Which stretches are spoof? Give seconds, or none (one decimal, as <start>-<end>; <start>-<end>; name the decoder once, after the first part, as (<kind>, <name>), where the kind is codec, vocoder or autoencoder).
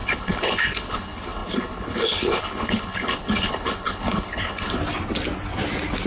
0.0-4.8 (codec, HILCodec)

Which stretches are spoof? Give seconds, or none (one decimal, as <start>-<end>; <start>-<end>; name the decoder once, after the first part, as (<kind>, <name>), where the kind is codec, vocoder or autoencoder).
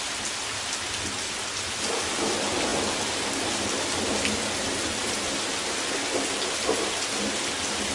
none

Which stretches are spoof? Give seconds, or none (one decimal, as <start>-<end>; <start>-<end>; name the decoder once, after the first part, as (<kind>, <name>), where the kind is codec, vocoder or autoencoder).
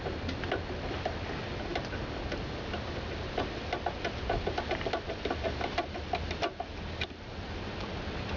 none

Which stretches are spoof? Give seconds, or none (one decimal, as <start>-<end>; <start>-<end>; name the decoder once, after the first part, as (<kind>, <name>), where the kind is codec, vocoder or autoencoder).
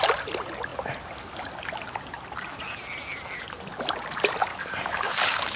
4.5-5.6 (codec, DAC)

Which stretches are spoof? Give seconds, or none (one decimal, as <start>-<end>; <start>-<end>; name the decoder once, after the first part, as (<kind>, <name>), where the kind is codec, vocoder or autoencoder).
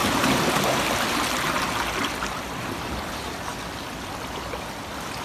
none